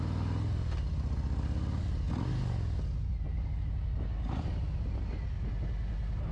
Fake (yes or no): no